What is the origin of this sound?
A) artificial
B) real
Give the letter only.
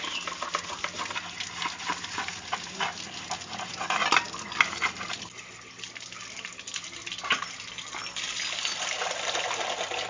B